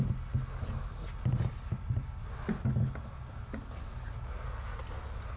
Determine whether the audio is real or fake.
real